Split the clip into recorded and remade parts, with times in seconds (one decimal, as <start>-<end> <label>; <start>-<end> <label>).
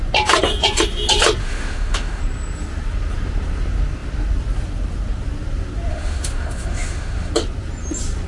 0.0-1.4 recorded; 1.4-2.2 remade; 2.2-5.9 recorded; 5.9-7.3 remade; 7.3-8.3 recorded